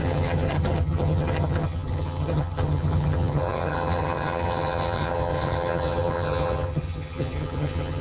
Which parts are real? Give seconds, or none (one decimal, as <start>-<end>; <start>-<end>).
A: none